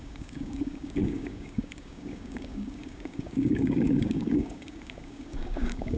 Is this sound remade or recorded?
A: remade